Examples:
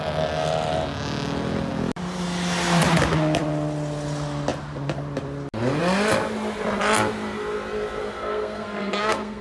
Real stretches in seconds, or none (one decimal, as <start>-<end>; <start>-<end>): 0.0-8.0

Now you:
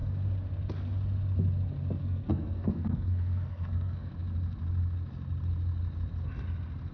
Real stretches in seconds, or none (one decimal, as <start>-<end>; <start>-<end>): 0.0-2.0; 4.1-6.9

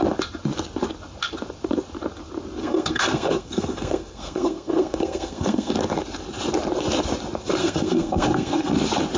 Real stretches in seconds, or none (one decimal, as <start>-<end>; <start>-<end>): 0.0-2.6; 5.7-7.6; 8.7-9.2

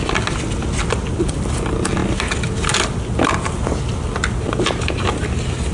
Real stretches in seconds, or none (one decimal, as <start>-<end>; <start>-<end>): 0.0-5.7

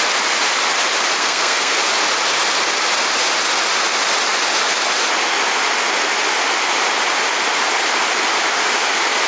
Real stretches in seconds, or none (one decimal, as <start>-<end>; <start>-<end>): 0.0-1.2; 1.8-9.3

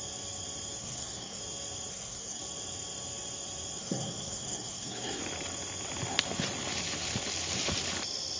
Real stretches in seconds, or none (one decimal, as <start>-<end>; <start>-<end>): 0.0-0.8; 1.4-1.9; 2.4-3.8; 5.2-8.4

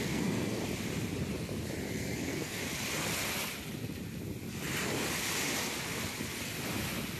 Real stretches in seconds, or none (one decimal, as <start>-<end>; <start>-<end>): 0.6-1.9; 2.6-7.2